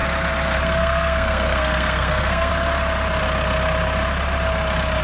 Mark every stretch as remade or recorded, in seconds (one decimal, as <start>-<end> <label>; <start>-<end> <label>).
0.0-0.6 recorded; 0.6-2.5 remade; 2.5-5.0 recorded